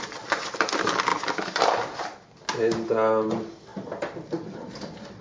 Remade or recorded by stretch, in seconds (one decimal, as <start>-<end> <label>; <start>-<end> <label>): 0.0-1.1 recorded; 1.1-2.3 remade; 2.3-3.7 recorded; 3.7-5.2 remade

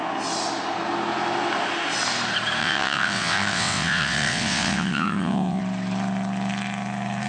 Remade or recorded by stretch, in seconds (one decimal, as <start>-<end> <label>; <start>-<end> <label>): 0.0-2.6 recorded; 2.6-5.6 remade; 5.6-7.3 recorded

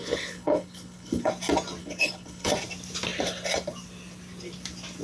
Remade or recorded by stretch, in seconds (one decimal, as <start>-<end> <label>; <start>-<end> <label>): 0.0-1.3 remade; 1.3-1.8 recorded; 1.8-2.5 remade; 2.5-5.0 recorded

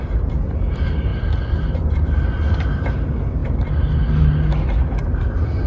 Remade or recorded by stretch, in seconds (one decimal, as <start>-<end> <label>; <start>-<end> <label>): 0.0-5.7 recorded

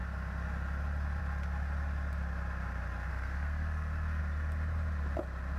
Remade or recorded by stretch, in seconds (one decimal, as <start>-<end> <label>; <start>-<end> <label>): 0.0-3.1 recorded; 3.1-4.2 remade; 4.2-5.6 recorded

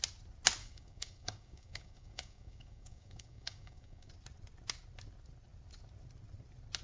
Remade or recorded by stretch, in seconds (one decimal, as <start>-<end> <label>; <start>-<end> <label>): 0.0-0.6 recorded; 0.6-4.1 remade; 4.1-6.8 recorded

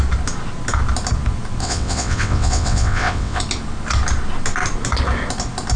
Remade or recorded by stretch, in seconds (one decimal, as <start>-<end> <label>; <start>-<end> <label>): 0.0-1.6 recorded; 1.6-3.4 remade; 3.4-5.8 recorded

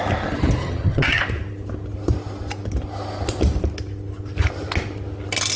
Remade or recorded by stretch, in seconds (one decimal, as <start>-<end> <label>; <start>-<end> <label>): 0.0-0.6 recorded; 0.6-1.2 remade; 1.2-5.6 recorded